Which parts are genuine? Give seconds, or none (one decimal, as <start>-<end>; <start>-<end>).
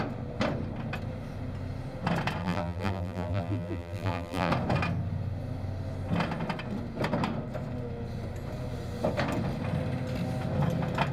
0.0-2.4; 4.5-11.1